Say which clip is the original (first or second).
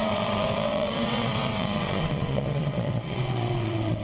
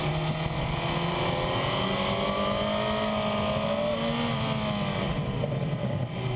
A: second